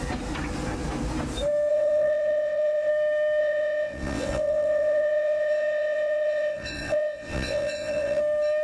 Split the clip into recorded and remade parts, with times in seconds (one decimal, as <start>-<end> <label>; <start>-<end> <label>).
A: 0.0-1.7 recorded; 1.7-2.9 remade; 2.9-3.4 recorded; 3.4-8.2 remade; 8.2-8.6 recorded